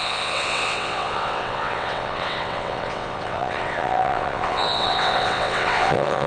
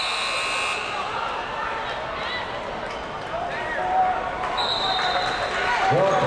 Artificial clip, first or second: first